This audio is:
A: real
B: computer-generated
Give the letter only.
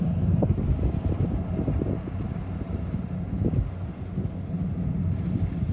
A